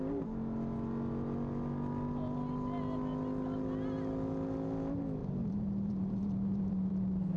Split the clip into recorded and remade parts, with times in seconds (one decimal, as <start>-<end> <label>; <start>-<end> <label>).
0.0-5.2 recorded; 5.2-6.9 remade; 6.9-7.4 recorded